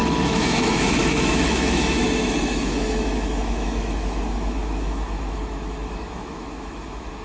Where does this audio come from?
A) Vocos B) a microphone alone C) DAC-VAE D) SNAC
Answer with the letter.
C